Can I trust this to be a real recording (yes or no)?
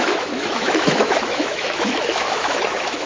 no